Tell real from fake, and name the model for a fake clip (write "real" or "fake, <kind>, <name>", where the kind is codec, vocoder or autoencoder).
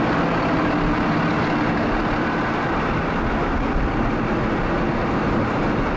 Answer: real